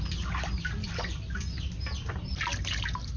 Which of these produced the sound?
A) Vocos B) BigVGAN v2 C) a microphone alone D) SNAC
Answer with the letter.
C